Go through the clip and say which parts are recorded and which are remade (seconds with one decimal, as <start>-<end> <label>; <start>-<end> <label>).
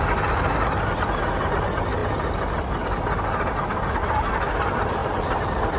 0.0-5.8 recorded